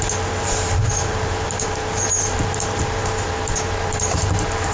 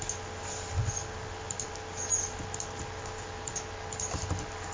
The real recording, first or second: second